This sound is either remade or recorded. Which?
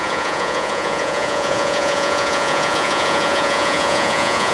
remade